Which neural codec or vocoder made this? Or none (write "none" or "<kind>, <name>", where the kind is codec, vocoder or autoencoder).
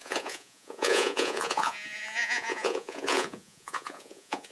vocoder, Vocos